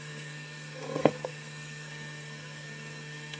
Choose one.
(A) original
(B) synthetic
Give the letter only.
B